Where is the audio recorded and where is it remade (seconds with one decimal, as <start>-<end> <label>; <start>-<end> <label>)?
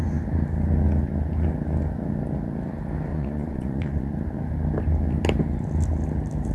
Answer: 0.0-3.1 recorded; 3.1-4.1 remade; 4.1-6.5 recorded